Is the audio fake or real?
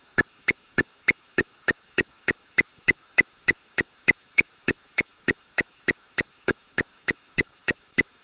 fake